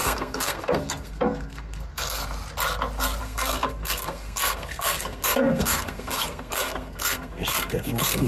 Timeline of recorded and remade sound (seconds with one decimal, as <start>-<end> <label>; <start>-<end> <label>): 0.0-2.2 remade; 2.2-3.2 recorded; 3.2-8.3 remade